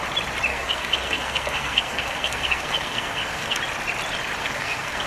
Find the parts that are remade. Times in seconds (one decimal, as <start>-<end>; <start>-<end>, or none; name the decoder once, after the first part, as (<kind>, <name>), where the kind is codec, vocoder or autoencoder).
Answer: 0.5-3.6 (codec, SNAC); 4.4-5.1